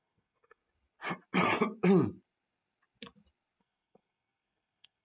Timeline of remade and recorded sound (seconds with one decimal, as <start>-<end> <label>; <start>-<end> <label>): 0.0-0.6 remade; 0.6-3.6 recorded; 3.6-5.0 remade